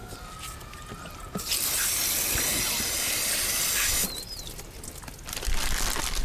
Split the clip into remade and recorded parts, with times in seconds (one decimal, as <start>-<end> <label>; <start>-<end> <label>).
0.0-6.2 recorded